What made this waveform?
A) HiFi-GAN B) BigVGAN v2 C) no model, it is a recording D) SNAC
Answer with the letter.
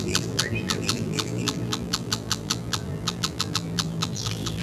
B